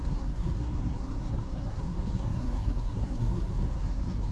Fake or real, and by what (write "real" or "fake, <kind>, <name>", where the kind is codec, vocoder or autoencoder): fake, codec, SNAC